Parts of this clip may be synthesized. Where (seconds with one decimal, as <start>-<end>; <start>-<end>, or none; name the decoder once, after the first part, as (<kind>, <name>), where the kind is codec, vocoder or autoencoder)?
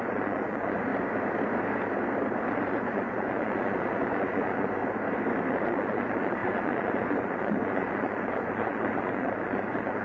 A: 0.0-0.9 (vocoder, Vocos); 2.5-4.8; 5.5-10.0